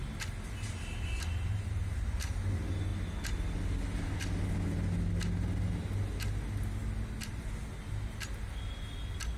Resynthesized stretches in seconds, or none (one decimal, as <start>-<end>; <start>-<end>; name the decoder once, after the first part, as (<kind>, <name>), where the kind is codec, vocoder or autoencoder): none